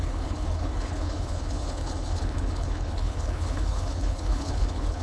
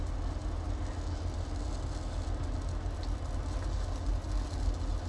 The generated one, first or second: first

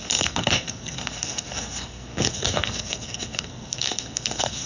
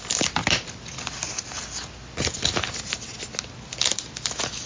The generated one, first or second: first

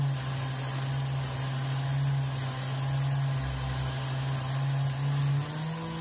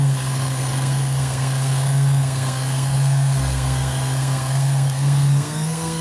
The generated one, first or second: second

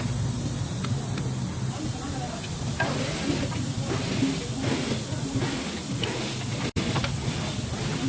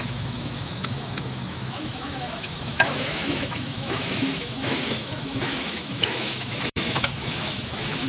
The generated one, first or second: second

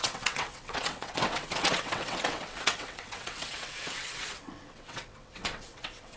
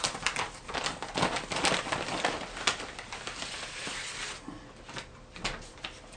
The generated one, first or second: first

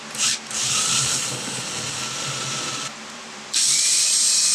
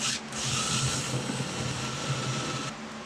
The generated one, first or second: first